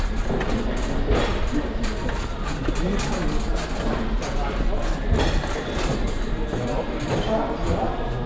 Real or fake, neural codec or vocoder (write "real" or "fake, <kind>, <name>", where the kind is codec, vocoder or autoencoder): real